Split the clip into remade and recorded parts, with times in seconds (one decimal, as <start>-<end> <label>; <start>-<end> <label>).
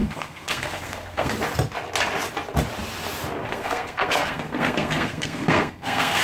0.0-1.3 remade; 1.3-3.5 recorded; 3.5-6.2 remade